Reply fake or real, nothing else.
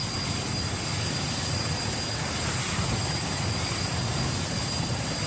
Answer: real